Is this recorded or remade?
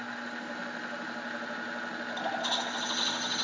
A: recorded